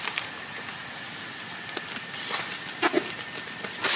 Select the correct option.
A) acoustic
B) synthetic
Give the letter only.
A